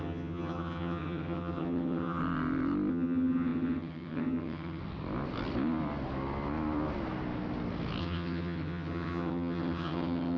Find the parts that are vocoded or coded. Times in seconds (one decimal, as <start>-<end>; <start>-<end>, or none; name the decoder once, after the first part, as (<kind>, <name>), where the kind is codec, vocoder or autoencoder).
0.0-2.2 (vocoder, HiFi-GAN); 2.9-4.8; 8.0-10.4